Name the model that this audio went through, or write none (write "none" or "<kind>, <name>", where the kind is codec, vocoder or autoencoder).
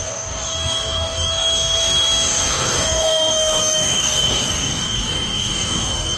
codec, DAC